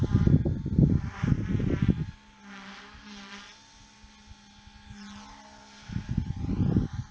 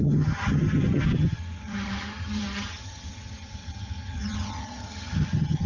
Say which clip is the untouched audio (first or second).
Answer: first